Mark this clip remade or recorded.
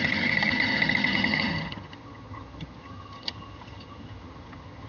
remade